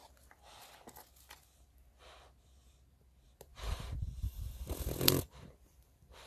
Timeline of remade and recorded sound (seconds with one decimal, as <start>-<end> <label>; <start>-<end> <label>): 0.0-3.5 recorded; 3.5-6.3 remade